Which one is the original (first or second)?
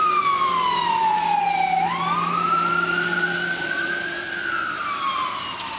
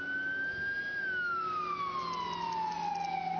second